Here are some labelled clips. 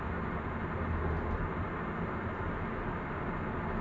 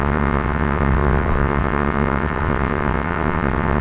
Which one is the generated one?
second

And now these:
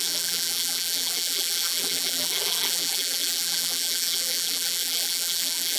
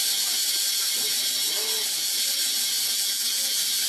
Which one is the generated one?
first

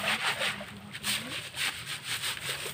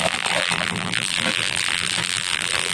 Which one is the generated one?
second